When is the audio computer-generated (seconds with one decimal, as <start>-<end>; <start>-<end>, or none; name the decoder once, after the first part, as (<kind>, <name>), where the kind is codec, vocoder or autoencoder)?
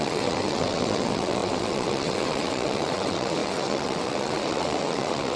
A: 0.0-5.4 (vocoder, WaveNeXt)